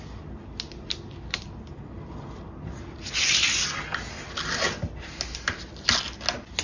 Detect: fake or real real